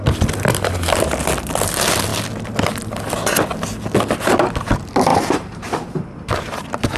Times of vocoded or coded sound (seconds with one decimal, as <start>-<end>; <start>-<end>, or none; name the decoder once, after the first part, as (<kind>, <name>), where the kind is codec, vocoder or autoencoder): 5.1-7.0 (vocoder, BigVGAN v2)